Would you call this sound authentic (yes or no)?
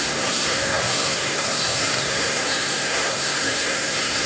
no